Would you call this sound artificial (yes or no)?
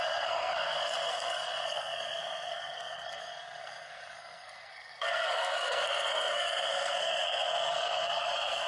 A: yes